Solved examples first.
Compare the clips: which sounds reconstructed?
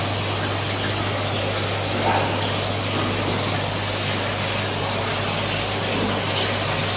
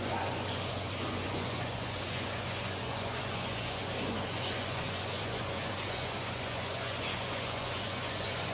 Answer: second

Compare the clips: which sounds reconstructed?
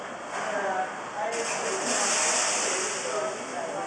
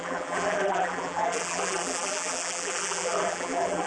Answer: second